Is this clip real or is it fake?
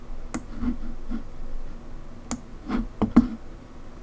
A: real